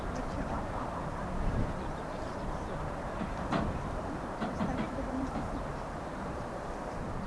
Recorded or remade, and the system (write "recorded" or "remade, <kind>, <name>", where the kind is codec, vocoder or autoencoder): remade, vocoder, BigVGAN v2